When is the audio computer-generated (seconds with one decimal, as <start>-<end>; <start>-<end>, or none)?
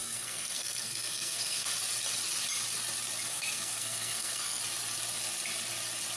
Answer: 0.0-1.7; 3.3-4.6